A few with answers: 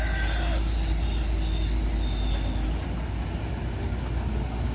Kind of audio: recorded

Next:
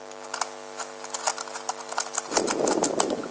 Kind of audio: recorded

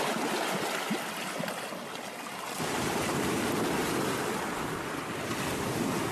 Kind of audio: recorded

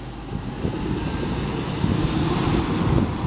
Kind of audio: recorded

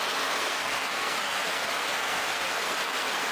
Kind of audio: remade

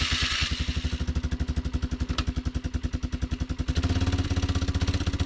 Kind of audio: recorded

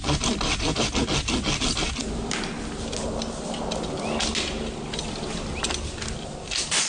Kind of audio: recorded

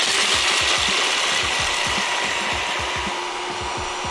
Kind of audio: recorded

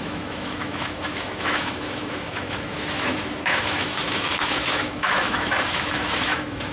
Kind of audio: remade